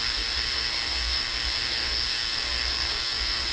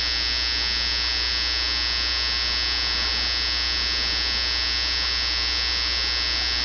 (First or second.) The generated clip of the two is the first